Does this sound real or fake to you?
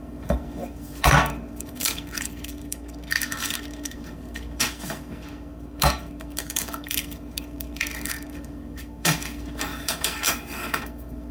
fake